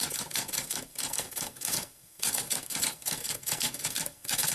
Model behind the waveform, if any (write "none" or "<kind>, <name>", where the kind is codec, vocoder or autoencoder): codec, SNAC